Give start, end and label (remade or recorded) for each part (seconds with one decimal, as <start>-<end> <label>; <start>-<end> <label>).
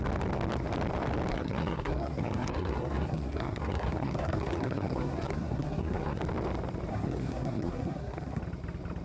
0.0-1.3 recorded; 1.3-6.2 remade; 6.2-6.9 recorded; 6.9-8.4 remade; 8.4-9.0 recorded